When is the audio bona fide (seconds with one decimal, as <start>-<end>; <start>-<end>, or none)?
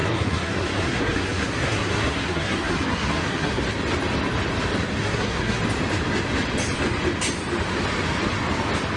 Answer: 3.6-5.0; 5.6-9.0